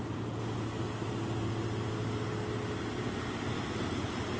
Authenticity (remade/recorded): recorded